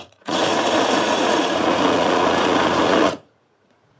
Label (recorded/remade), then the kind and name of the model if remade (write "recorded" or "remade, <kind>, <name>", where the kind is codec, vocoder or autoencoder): remade, vocoder, Vocos